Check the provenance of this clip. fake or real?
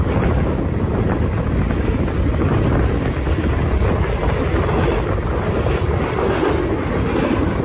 real